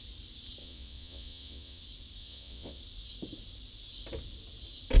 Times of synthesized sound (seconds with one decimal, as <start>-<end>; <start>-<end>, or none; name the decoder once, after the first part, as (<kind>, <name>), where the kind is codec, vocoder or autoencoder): 0.6-1.8 (vocoder, WaveNeXt); 2.2-2.8